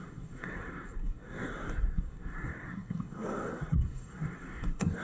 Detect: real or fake fake